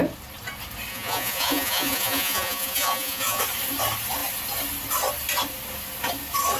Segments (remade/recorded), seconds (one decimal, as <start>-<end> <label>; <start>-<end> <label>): 0.0-0.9 recorded; 0.9-3.4 remade; 3.4-6.6 recorded